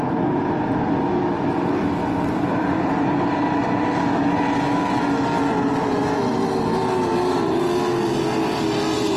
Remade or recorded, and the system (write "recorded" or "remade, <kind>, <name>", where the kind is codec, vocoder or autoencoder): recorded